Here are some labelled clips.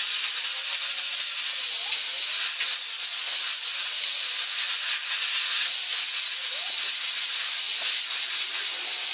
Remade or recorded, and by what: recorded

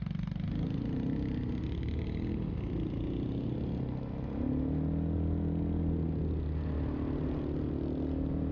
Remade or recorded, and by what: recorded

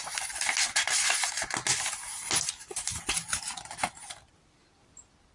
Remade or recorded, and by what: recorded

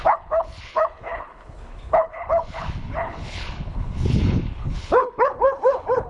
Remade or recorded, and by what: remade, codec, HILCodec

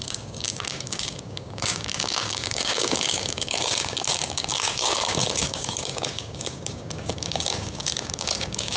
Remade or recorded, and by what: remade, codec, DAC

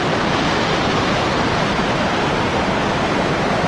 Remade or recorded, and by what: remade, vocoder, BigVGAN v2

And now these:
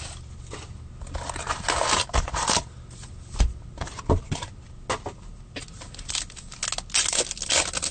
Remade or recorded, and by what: recorded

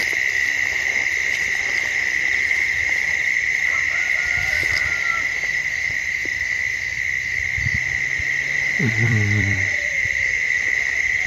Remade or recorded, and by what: remade, vocoder, BigVGAN v2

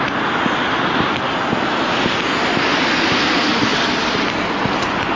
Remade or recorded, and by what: recorded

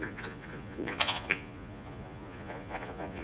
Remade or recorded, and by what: remade, vocoder, Vocos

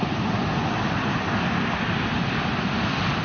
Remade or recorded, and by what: recorded